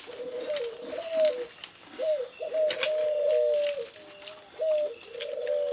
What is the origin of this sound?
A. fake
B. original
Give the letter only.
B